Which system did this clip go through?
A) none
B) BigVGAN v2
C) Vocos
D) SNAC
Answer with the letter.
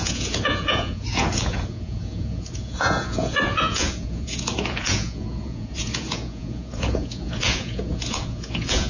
C